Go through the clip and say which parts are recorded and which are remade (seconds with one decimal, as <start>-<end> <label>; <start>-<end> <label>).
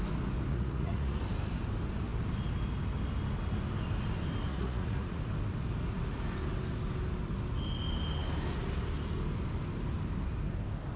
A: 0.0-0.5 recorded; 0.5-1.2 remade; 1.2-4.5 recorded; 4.5-5.2 remade; 5.2-11.0 recorded